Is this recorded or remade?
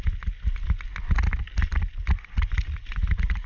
recorded